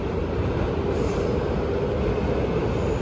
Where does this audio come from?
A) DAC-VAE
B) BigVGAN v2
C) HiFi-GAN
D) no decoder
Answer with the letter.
D